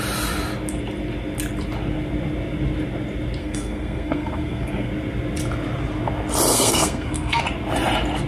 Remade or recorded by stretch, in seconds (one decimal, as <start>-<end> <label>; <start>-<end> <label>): 0.0-3.4 recorded; 3.4-4.9 remade; 4.9-6.5 recorded; 6.5-7.4 remade; 7.4-8.3 recorded